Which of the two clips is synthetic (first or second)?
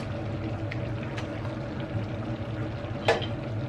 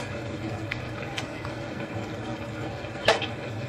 second